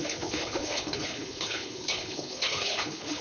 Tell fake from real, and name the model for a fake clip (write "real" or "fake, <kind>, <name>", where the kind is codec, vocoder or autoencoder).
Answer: fake, codec, HILCodec